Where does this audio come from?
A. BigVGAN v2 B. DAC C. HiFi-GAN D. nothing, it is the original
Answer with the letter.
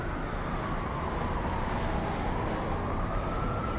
D